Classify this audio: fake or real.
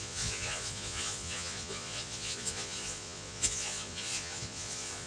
fake